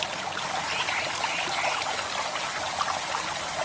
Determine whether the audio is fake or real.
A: real